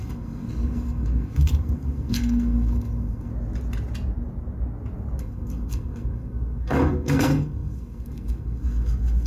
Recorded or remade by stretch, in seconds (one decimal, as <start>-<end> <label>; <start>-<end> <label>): 0.0-3.3 remade; 3.3-5.2 recorded; 5.2-9.3 remade